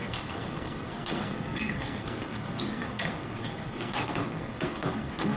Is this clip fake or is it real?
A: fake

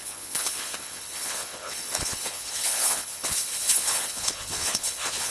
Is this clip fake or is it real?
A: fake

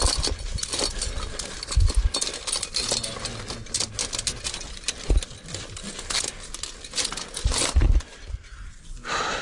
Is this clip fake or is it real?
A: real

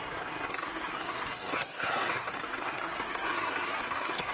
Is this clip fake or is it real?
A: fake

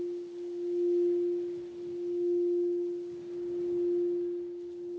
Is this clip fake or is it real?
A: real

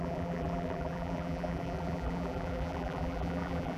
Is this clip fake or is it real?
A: fake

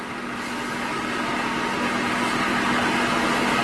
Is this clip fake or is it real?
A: real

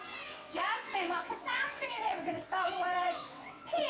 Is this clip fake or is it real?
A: fake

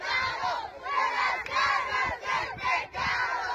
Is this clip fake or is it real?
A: real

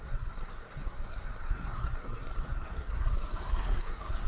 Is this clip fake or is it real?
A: fake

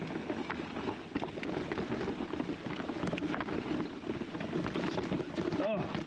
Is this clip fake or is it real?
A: real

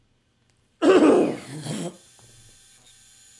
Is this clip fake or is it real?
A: real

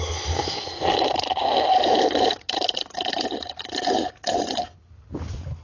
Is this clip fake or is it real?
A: real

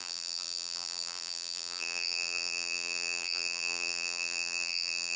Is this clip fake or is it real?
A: fake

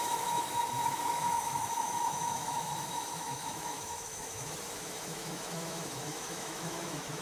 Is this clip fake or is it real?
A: fake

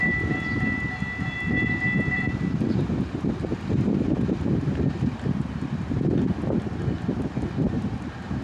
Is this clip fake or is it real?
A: fake